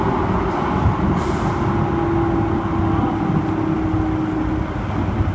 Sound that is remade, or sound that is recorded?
recorded